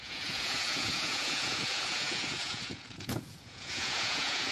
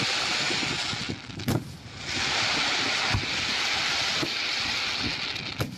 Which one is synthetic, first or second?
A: first